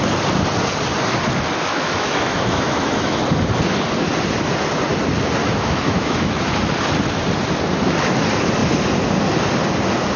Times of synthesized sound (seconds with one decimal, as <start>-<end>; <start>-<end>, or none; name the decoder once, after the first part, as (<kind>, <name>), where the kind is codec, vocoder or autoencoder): 1.7-3.2 (autoencoder, DAC-VAE); 5.4-6.5